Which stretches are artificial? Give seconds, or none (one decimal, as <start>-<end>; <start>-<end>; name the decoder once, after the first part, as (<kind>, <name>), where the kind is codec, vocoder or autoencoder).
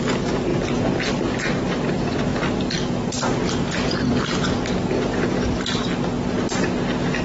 none